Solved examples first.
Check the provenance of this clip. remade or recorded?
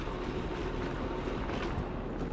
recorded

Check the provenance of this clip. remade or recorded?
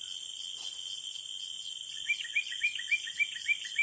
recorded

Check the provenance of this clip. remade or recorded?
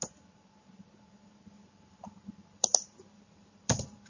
remade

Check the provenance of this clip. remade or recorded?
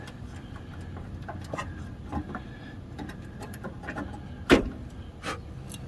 remade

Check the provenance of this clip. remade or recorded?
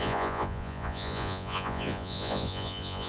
remade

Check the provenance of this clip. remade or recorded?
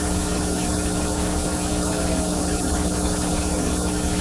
remade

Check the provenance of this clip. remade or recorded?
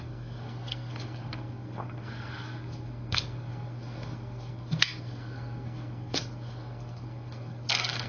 remade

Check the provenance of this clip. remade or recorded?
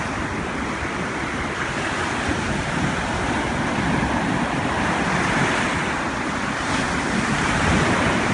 recorded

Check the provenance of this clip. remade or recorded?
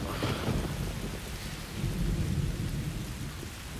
recorded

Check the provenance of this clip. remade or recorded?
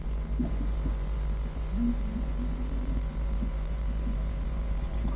remade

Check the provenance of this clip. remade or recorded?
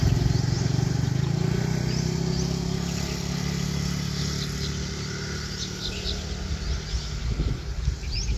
recorded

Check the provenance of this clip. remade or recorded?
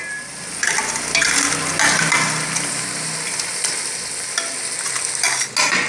recorded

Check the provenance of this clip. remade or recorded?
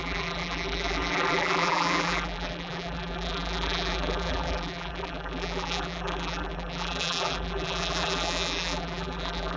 remade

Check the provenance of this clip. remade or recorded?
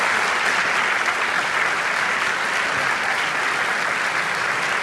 recorded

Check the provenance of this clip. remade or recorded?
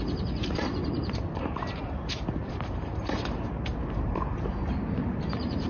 remade